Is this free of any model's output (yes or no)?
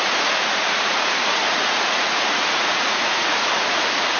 no